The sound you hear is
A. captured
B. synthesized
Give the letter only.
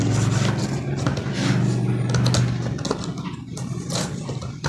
A